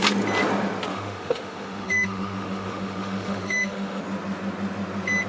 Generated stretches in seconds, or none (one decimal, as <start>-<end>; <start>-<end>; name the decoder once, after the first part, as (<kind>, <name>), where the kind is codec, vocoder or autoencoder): 0.9-4.0 (autoencoder, DAC-VAE)